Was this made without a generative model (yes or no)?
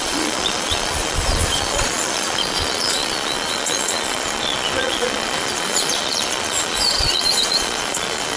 no